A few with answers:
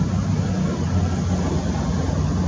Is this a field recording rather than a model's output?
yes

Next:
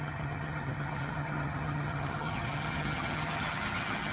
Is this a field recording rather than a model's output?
no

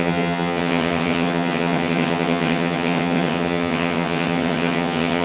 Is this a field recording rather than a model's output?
no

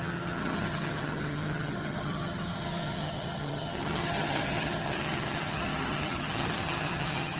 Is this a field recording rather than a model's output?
no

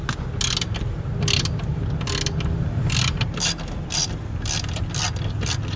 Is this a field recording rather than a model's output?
yes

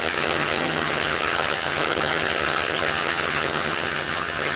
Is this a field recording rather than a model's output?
no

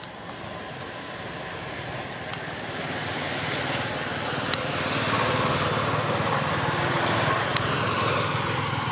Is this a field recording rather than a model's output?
yes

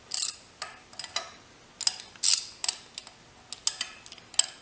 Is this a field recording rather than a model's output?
yes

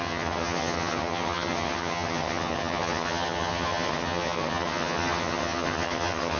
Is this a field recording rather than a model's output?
no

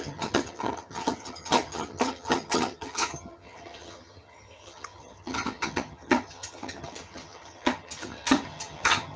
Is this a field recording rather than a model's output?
no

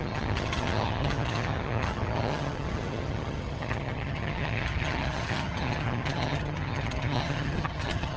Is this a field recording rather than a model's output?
no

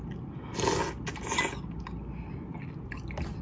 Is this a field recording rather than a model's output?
yes